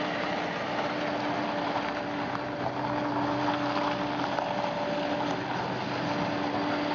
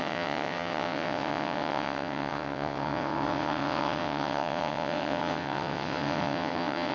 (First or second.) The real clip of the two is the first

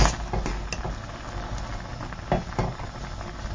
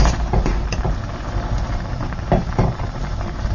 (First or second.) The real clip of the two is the first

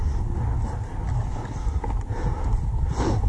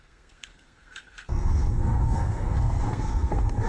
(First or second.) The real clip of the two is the first